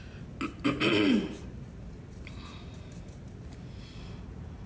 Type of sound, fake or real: real